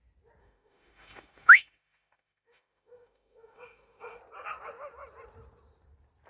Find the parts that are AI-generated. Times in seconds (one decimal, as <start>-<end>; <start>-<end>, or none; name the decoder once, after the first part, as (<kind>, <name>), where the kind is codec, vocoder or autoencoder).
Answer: 0.4-4.2 (autoencoder, DAC-VAE)